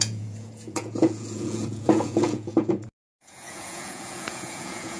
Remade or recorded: remade